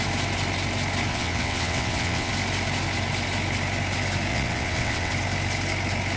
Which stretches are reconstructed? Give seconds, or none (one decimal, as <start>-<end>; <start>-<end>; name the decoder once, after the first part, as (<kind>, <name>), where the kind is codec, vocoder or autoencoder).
1.1-2.3 (vocoder, WaveNeXt); 4.3-5.1